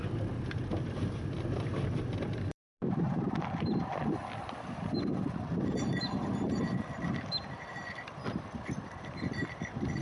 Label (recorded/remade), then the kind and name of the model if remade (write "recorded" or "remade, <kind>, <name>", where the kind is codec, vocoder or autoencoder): remade, vocoder, BigVGAN v2